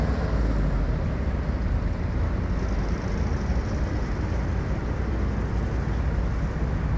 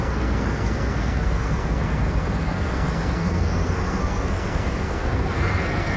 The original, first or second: first